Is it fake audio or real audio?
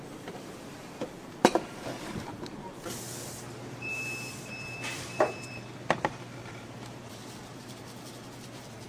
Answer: fake